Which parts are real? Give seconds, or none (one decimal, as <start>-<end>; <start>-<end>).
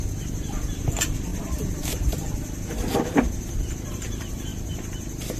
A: 0.0-1.3; 2.1-4.5